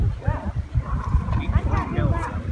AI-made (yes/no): no